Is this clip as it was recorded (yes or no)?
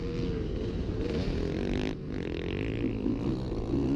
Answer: yes